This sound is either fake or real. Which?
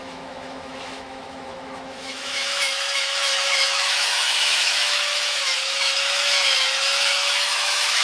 fake